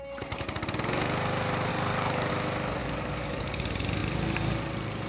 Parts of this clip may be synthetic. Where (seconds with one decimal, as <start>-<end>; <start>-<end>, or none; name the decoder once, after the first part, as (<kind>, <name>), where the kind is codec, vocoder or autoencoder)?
1.7-2.3 (codec, DAC); 2.8-3.4